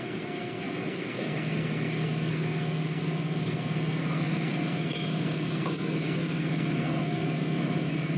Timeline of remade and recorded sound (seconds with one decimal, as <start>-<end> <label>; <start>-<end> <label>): 0.0-8.2 remade